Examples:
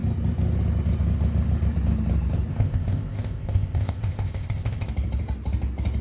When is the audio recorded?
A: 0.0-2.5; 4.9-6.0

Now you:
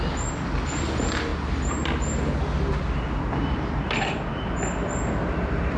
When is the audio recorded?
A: 0.0-5.8